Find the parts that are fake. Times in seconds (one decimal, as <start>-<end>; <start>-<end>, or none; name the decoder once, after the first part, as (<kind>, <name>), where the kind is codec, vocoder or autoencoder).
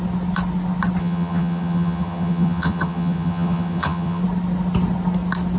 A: 1.0-4.2 (vocoder, HiFi-GAN)